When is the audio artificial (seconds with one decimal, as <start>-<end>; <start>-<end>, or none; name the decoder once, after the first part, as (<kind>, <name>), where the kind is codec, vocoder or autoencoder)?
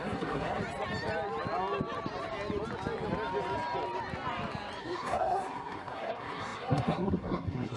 0.0-0.6 (codec, SNAC); 4.8-7.8